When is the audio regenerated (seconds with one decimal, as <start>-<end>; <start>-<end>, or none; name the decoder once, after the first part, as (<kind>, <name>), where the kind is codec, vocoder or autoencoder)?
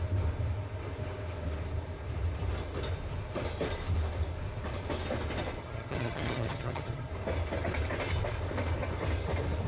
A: 5.6-7.1 (vocoder, HiFi-GAN)